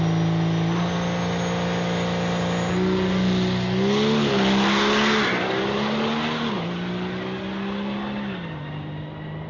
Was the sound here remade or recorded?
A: recorded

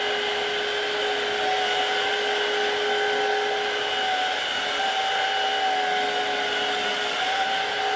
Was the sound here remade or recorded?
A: recorded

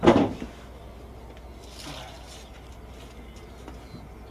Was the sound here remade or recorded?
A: recorded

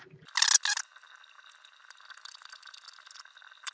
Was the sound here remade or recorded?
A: recorded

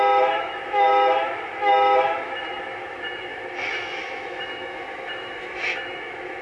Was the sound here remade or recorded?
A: remade